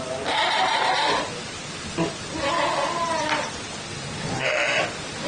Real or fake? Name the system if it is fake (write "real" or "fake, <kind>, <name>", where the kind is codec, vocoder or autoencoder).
real